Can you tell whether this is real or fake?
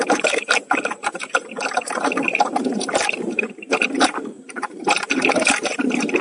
fake